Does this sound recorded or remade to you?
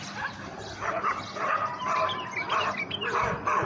recorded